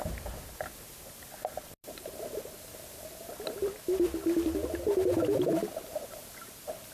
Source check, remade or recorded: recorded